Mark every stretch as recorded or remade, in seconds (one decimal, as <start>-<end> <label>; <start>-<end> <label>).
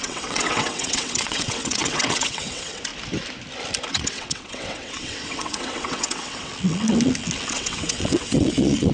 0.0-2.9 remade; 2.9-3.9 recorded; 3.9-6.5 remade; 6.5-7.5 recorded; 7.5-8.9 remade